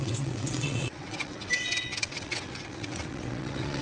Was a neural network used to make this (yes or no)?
yes